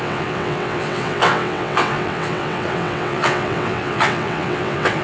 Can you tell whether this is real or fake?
fake